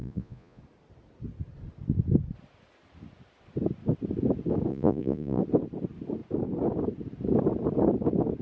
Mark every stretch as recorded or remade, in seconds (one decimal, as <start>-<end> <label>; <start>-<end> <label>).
0.0-0.6 remade; 0.6-4.7 recorded; 4.7-5.4 remade; 5.4-8.4 recorded